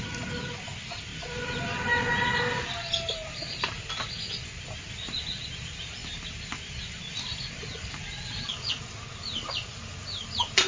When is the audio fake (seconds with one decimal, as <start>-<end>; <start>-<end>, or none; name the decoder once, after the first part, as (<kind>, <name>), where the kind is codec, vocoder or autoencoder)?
none